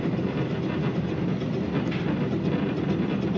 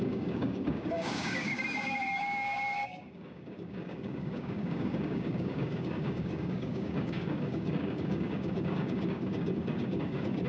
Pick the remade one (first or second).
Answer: second